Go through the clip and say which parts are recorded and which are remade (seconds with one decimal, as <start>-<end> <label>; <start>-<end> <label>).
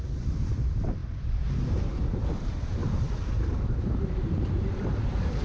0.0-2.8 remade; 2.8-3.6 recorded; 3.6-5.4 remade